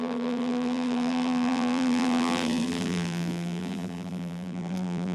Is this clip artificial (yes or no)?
yes